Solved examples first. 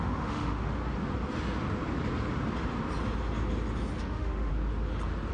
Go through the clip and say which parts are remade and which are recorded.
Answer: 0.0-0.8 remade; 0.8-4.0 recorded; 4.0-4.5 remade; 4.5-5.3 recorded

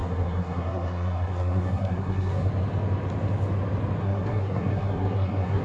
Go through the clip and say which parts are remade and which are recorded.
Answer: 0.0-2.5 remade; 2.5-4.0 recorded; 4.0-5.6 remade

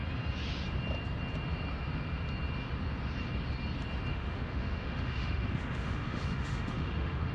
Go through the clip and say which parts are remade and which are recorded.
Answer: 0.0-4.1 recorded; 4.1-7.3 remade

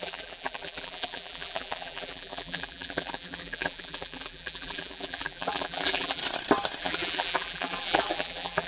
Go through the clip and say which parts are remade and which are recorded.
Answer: 0.0-6.2 remade; 6.2-6.8 recorded; 6.8-8.7 remade

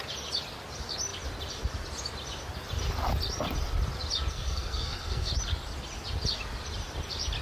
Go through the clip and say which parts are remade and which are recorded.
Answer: 0.0-4.3 recorded; 4.3-5.3 remade; 5.3-7.4 recorded